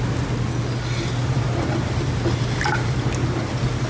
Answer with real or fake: real